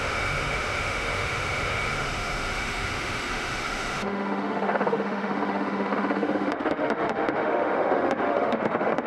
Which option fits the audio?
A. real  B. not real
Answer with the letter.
B